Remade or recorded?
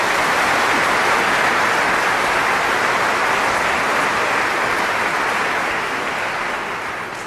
recorded